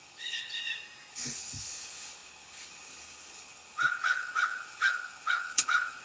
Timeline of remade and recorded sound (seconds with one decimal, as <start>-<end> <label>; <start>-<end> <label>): 0.0-0.6 remade; 0.6-1.1 recorded; 1.1-6.0 remade